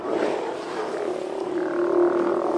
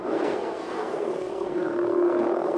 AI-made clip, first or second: second